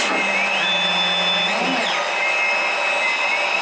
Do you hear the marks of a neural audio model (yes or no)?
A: no